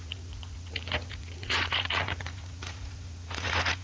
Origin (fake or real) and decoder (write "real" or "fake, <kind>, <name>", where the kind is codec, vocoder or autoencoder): fake, vocoder, Vocos